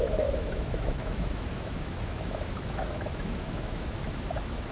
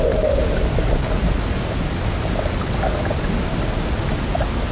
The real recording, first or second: second